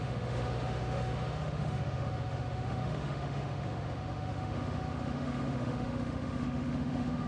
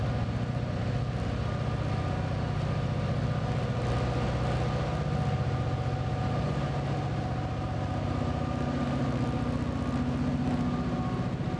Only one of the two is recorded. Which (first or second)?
second